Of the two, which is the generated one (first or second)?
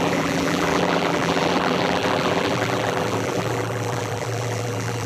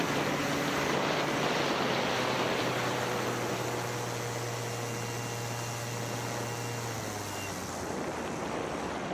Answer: first